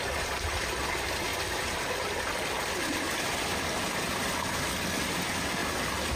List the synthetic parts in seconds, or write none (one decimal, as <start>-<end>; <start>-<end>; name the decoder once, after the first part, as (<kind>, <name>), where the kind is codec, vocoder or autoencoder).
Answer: none

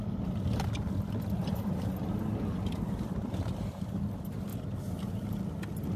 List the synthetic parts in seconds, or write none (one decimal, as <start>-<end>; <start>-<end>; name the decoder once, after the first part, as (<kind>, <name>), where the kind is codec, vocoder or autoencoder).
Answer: 1.4-2.2 (vocoder, BigVGAN v2)

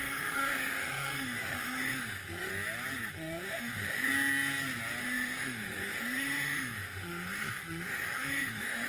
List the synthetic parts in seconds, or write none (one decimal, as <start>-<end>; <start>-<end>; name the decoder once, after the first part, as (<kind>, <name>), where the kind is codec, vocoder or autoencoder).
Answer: 0.0-2.5 (autoencoder, DAC-VAE); 3.1-4.1; 5.0-8.9

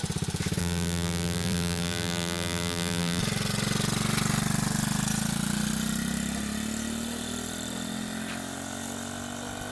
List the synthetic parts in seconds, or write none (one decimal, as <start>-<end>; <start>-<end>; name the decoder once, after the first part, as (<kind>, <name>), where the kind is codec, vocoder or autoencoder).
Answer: 0.6-3.2 (vocoder, BigVGAN v2)

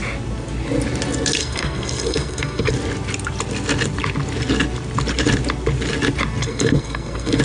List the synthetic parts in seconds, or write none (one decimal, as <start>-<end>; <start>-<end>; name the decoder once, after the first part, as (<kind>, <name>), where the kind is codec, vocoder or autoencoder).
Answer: 1.4-2.7 (codec, SNAC); 6.4-7.4